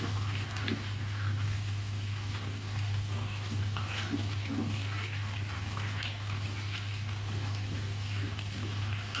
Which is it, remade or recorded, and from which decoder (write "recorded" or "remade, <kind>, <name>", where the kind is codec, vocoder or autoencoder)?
remade, codec, DAC